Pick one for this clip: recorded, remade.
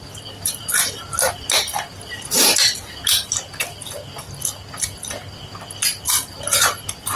recorded